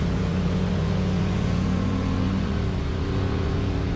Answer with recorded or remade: remade